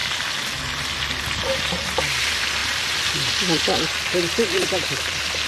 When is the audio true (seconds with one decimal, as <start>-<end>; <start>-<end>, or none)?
0.0-1.4